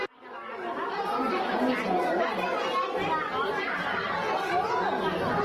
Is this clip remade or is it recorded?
recorded